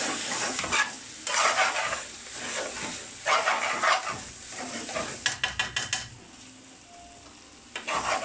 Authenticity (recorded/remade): recorded